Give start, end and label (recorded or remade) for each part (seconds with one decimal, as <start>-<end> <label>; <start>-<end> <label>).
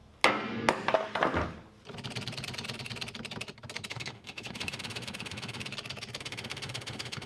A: 0.0-3.9 recorded; 3.9-5.7 remade; 5.7-6.2 recorded; 6.2-7.3 remade